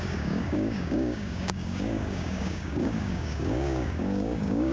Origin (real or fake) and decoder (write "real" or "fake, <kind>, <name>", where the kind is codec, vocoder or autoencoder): fake, codec, DAC